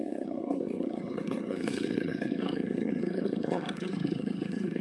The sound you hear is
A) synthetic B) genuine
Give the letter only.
A